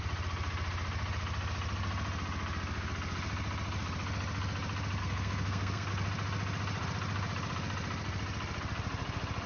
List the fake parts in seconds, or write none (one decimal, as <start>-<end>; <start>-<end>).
5.0-5.9